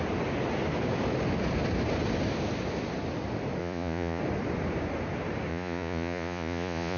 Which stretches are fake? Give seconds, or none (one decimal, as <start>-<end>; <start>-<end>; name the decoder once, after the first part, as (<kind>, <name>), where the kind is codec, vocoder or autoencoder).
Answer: 3.6-4.2 (vocoder, Vocos); 5.5-7.0